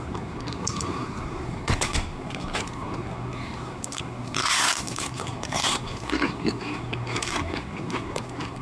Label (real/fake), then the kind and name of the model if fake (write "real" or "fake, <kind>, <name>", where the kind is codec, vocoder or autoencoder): fake, codec, SNAC